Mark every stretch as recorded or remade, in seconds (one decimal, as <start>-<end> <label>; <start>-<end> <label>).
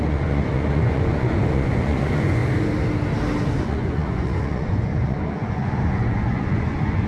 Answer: 0.0-2.4 remade; 2.4-3.6 recorded; 3.6-7.1 remade